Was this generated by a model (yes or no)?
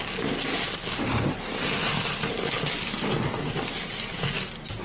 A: no